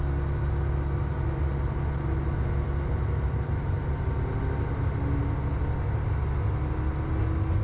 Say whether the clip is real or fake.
real